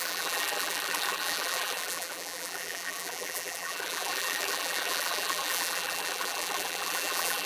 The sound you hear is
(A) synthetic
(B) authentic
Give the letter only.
A